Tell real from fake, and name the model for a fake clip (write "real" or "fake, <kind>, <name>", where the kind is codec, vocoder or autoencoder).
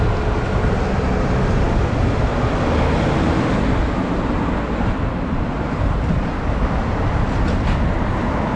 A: real